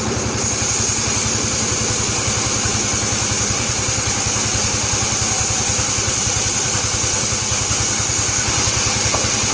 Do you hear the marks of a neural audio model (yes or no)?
yes